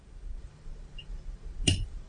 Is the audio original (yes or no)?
no